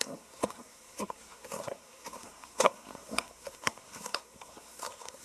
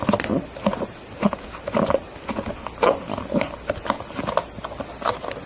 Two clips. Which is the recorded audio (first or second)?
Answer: second